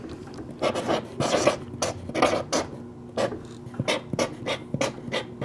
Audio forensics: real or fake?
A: real